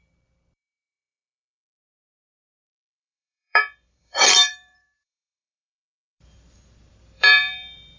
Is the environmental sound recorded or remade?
remade